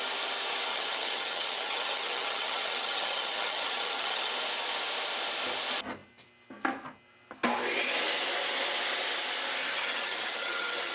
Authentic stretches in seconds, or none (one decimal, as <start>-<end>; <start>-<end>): 0.0-0.7; 4.3-9.6